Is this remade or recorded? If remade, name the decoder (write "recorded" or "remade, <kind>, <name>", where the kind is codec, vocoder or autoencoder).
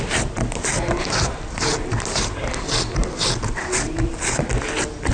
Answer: recorded